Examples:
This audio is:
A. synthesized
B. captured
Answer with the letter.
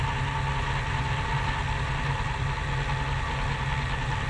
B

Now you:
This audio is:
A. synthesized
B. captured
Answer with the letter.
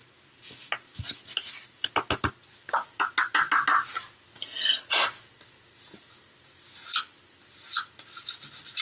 B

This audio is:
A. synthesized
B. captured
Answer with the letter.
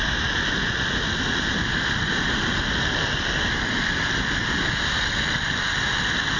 B